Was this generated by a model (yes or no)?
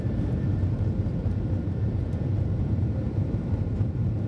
yes